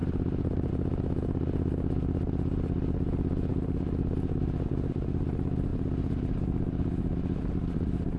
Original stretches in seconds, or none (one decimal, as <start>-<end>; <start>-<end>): 0.7-5.7